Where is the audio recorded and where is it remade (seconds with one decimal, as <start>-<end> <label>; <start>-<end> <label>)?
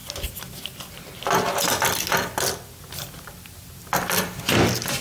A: 0.0-3.0 recorded; 3.0-5.0 remade